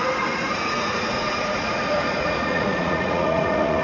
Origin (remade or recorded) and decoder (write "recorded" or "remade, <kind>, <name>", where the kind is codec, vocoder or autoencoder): remade, vocoder, Vocos